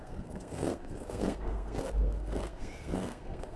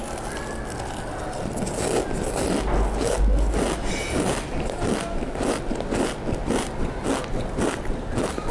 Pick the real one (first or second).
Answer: second